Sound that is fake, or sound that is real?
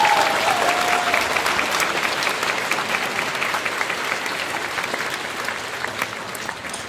real